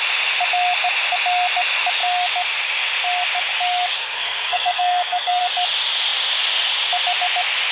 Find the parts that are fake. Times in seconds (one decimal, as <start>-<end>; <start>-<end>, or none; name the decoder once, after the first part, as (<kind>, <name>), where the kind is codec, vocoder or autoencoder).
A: 4.0-5.4 (codec, SNAC)